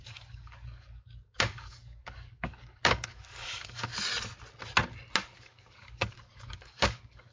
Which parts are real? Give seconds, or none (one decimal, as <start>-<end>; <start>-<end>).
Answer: 3.9-5.2